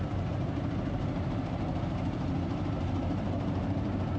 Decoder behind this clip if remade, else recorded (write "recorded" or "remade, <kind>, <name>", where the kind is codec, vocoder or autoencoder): remade, vocoder, BigVGAN v2